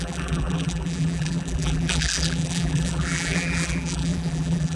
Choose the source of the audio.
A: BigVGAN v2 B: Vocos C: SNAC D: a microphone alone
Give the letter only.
A